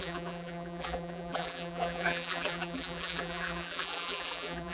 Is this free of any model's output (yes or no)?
no